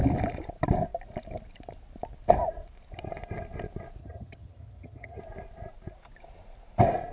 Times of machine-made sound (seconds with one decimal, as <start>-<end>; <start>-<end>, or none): 4.0-5.2